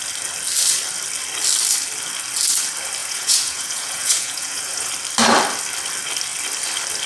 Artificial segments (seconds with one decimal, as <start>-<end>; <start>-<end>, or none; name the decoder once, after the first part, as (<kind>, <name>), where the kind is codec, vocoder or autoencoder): 3.0-4.9 (vocoder, Vocos)